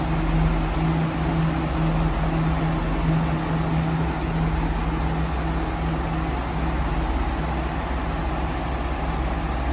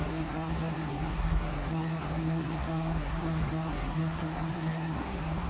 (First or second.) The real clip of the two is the first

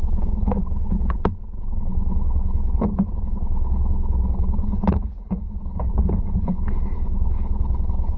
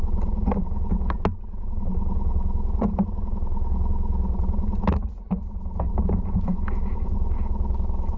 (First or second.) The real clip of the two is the second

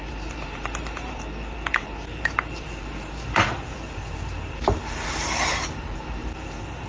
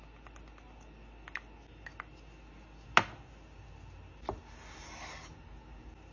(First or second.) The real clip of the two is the second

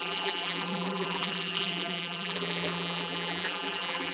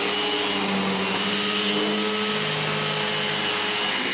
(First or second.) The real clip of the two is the second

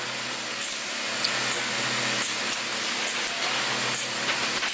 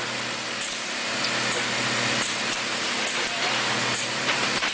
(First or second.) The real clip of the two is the first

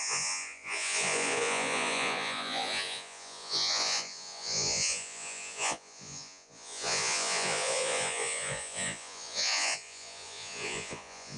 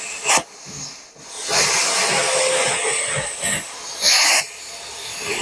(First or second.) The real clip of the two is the second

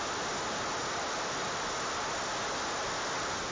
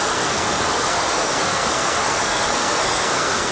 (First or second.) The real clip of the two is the first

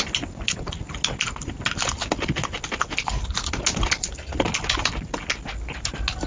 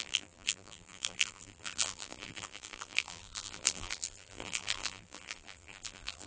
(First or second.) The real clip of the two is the first